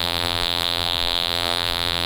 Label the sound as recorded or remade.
remade